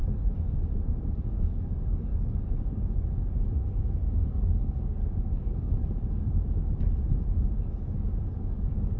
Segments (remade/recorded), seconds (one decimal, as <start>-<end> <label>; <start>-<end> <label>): 0.0-1.1 recorded; 1.1-2.1 remade; 2.1-3.8 recorded; 3.8-5.8 remade; 5.8-8.4 recorded; 8.4-9.0 remade